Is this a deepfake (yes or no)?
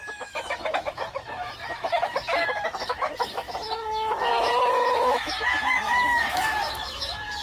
yes